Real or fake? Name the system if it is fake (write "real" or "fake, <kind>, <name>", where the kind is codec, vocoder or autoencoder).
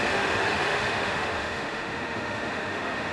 fake, autoencoder, DAC-VAE